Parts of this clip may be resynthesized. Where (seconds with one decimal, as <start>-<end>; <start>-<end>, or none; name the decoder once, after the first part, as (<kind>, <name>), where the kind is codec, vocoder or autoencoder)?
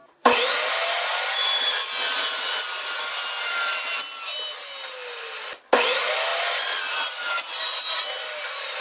none